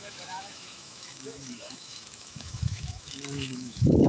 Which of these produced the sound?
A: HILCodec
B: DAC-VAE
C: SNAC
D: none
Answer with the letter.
B